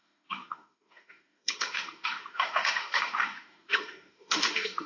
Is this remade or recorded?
remade